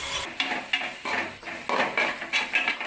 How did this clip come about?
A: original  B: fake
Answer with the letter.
A